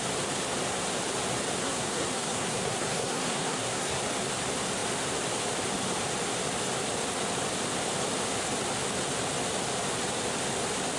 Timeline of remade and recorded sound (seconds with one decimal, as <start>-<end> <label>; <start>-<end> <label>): 0.0-1.6 recorded; 1.6-4.0 remade; 4.0-11.0 recorded